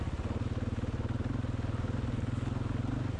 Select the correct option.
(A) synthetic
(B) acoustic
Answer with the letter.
B